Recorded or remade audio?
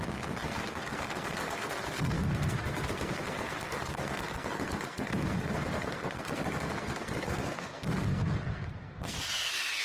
remade